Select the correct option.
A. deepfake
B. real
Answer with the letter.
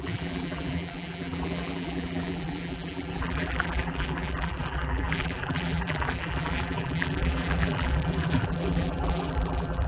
A